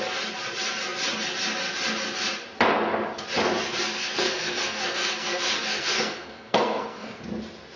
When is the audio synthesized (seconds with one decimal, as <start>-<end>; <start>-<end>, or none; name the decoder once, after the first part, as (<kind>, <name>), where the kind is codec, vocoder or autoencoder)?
4.0-7.2 (codec, SNAC)